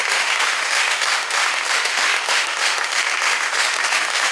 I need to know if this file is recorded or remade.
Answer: remade